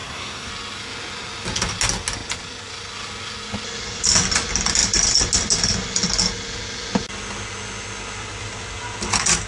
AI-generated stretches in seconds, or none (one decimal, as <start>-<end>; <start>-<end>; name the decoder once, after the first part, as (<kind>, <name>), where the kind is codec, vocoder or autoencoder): 0.0-0.5 (codec, SNAC)